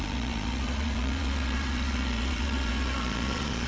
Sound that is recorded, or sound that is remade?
remade